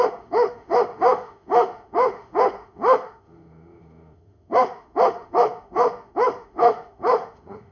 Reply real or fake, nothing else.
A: fake